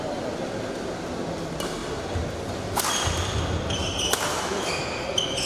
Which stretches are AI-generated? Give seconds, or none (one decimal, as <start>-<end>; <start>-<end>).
4.3-4.8